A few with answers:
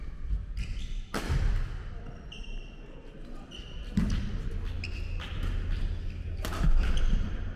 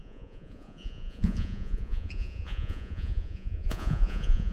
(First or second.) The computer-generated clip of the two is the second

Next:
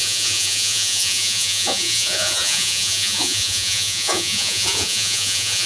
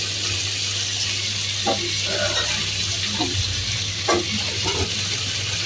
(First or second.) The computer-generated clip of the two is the first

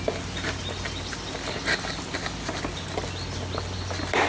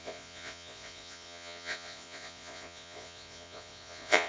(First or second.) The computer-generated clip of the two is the second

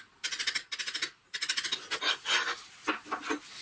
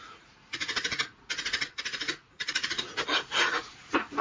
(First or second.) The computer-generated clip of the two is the second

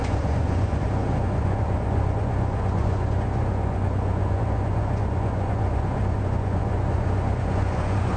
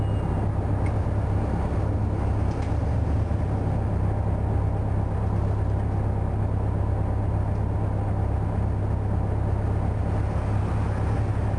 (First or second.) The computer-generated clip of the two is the first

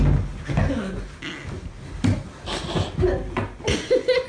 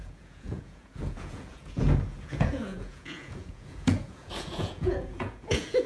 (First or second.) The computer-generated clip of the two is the second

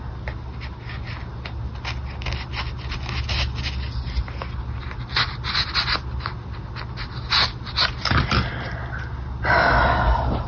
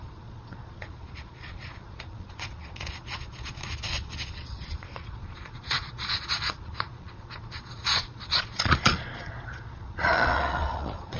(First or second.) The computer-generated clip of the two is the second